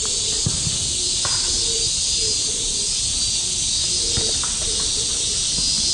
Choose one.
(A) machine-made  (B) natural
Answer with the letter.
B